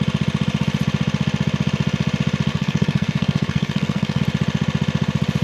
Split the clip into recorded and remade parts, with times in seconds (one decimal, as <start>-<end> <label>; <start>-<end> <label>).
0.0-2.5 recorded; 2.5-4.2 remade; 4.2-5.4 recorded